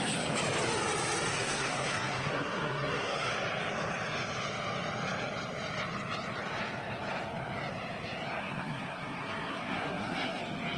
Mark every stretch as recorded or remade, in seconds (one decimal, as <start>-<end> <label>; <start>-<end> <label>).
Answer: 0.0-1.3 recorded; 1.3-3.3 remade; 3.3-8.4 recorded; 8.4-10.4 remade; 10.4-10.8 recorded